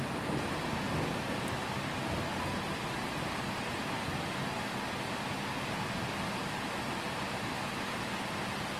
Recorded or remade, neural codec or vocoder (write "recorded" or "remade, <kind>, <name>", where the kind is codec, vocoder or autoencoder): recorded